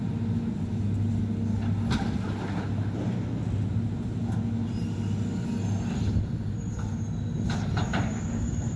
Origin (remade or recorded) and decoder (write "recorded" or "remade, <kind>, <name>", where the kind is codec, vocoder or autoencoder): recorded